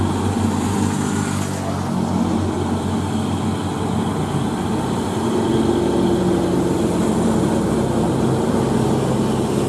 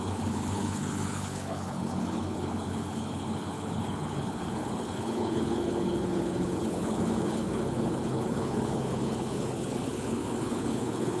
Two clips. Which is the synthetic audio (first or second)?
second